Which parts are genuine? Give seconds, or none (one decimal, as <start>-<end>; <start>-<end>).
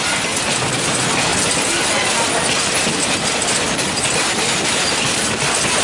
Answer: 0.0-5.8